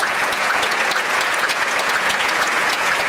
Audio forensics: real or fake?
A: fake